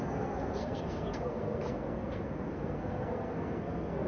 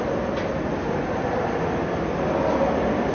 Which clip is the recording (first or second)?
second